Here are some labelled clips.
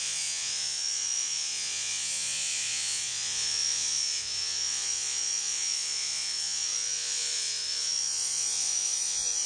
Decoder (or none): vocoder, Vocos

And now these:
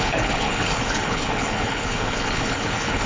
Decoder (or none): codec, HILCodec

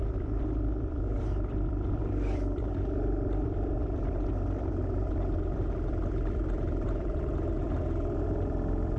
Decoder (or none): vocoder, BigVGAN v2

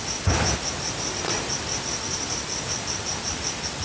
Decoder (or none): none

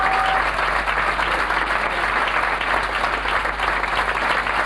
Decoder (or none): none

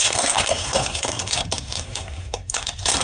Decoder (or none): codec, SNAC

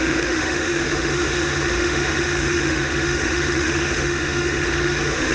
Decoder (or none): autoencoder, DAC-VAE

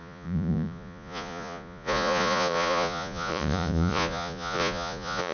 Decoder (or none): vocoder, Vocos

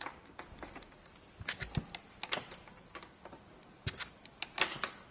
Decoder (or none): none